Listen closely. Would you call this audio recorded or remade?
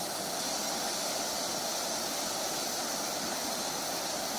recorded